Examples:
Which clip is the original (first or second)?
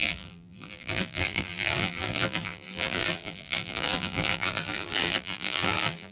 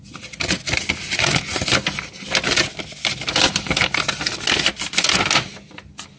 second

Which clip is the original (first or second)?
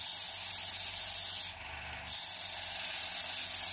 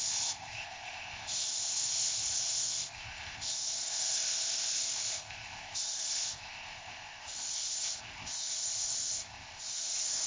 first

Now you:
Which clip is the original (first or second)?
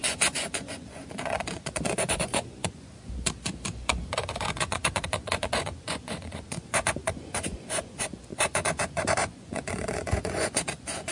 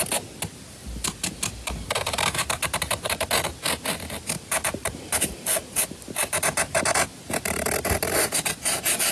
second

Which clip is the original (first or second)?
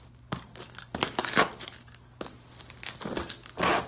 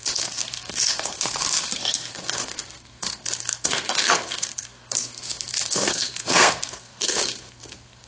first